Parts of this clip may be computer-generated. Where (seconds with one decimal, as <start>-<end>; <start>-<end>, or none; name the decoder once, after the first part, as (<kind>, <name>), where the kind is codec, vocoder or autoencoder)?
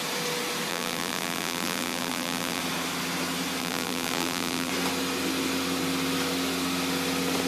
0.7-2.6 (vocoder, BigVGAN v2); 3.6-4.7